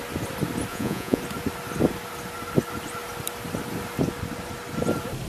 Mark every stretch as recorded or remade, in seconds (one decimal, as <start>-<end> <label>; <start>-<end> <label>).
0.0-0.7 recorded; 0.7-1.2 remade; 1.2-5.3 recorded